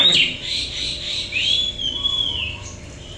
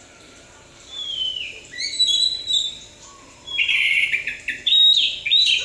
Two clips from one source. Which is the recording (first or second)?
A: first